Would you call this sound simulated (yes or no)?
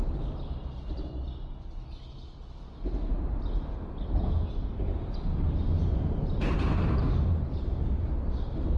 no